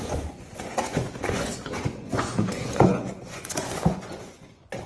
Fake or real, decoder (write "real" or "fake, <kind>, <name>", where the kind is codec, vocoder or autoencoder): fake, vocoder, Vocos